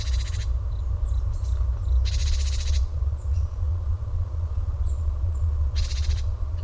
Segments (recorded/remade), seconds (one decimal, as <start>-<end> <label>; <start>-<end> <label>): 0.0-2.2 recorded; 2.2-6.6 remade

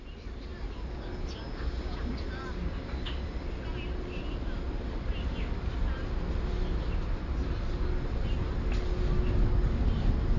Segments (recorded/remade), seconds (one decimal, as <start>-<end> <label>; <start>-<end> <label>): 0.0-10.4 recorded

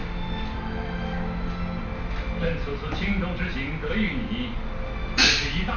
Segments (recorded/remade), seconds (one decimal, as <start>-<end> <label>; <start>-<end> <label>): 0.0-5.8 recorded

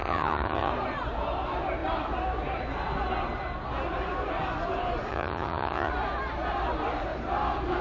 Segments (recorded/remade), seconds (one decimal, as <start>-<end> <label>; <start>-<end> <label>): 0.0-0.7 remade; 0.7-5.1 recorded; 5.1-5.9 remade; 5.9-7.8 recorded